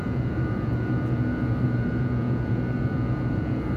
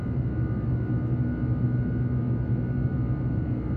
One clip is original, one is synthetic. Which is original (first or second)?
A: second